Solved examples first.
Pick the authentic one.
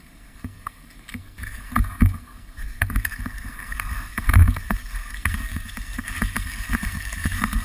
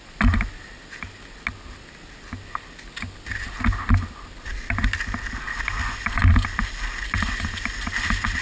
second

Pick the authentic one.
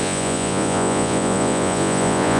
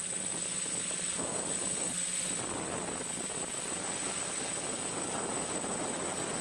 second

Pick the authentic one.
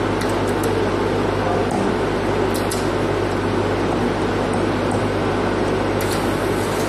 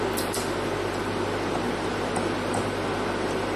first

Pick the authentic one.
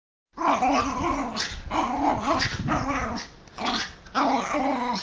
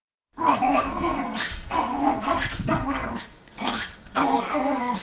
first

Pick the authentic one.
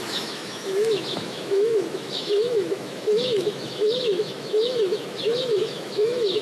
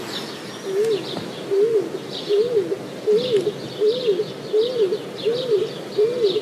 second